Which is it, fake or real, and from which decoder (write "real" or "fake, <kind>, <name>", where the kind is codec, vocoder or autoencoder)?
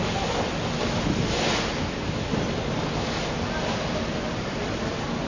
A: real